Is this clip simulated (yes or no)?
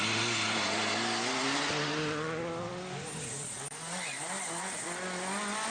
no